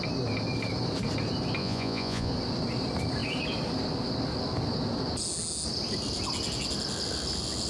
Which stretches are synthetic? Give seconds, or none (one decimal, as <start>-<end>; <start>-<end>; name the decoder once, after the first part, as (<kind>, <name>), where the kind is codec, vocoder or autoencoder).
1.6-2.3 (vocoder, Vocos)